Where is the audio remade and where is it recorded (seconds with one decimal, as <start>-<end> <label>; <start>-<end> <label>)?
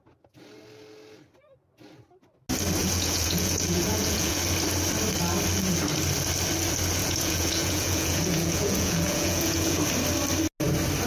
0.0-2.8 recorded; 2.8-4.4 remade; 4.4-7.0 recorded; 7.0-9.8 remade; 9.8-11.1 recorded